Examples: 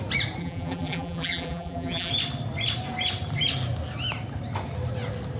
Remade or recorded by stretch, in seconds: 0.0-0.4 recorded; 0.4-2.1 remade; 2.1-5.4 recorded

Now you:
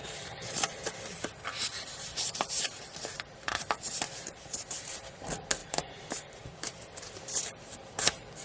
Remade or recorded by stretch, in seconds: 0.0-2.1 recorded; 2.1-2.6 remade; 2.6-3.1 recorded; 3.1-3.6 remade; 3.6-5.6 recorded; 5.6-7.2 remade; 7.2-8.4 recorded

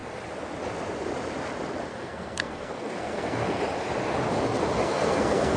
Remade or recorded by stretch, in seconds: 0.0-1.9 recorded; 1.9-3.6 remade; 3.6-4.8 recorded; 4.8-5.6 remade